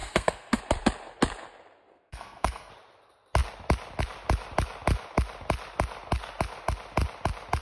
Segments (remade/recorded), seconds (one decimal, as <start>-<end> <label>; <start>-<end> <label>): 0.0-0.6 remade; 0.6-1.9 recorded; 1.9-2.7 remade; 2.7-7.6 recorded